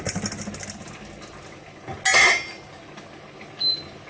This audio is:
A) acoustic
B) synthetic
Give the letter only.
A